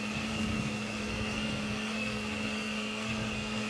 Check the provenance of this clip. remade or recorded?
remade